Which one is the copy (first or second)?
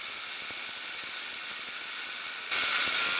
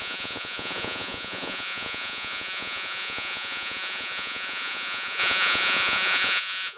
second